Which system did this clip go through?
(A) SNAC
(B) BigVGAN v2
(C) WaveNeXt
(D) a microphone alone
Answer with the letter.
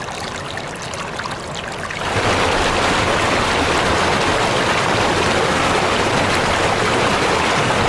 D